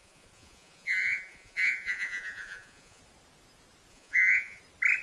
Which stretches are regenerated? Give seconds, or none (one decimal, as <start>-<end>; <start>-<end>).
0.0-3.0; 3.9-4.6